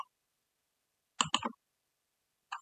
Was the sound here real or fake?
real